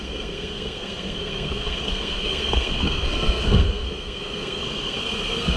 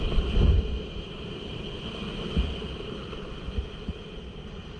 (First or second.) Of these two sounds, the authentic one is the second